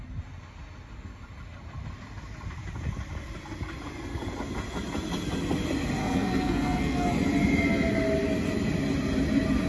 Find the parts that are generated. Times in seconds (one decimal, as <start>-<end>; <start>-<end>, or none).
6.0-7.1